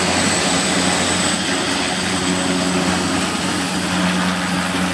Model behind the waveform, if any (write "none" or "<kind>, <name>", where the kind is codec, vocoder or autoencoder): none